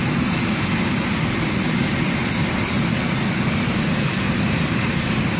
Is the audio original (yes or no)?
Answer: no